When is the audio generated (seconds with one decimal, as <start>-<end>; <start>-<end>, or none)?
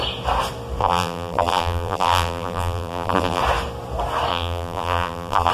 0.8-3.4; 4.3-5.5